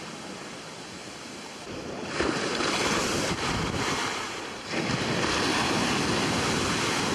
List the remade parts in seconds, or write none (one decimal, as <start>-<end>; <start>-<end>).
1.0-4.4